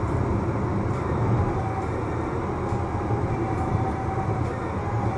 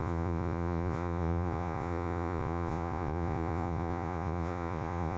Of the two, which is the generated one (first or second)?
second